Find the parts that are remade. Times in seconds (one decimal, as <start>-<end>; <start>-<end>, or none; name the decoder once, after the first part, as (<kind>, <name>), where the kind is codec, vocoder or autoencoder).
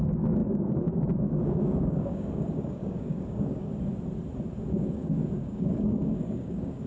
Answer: 0.0-3.7 (codec, DAC); 4.7-6.9